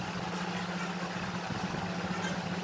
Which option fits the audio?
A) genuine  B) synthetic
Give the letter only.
A